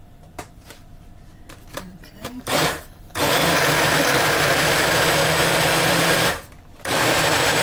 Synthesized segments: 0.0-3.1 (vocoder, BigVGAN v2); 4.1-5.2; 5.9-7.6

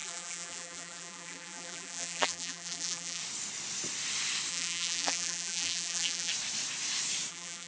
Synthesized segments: 0.0-3.2 (vocoder, BigVGAN v2); 4.5-6.3; 7.3-7.7

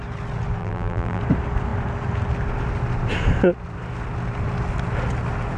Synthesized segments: 0.6-1.2 (vocoder, BigVGAN v2)